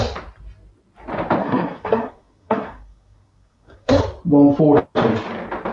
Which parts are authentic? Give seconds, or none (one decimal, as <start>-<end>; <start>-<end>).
0.0-1.4; 4.0-5.7